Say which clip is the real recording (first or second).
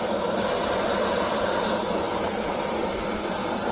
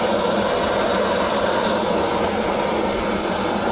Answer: second